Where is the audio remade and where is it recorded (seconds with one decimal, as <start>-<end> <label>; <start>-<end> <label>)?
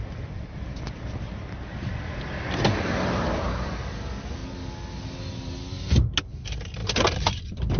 0.0-4.4 remade; 4.4-6.2 recorded; 6.2-7.8 remade